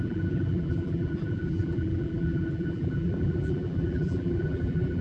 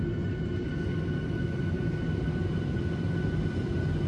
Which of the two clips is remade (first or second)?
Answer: first